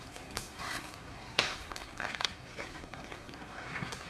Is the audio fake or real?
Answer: fake